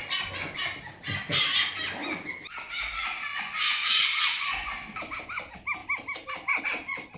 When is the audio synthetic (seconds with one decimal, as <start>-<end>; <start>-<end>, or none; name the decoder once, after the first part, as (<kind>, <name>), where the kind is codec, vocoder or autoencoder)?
3.3-4.7 (vocoder, Vocos)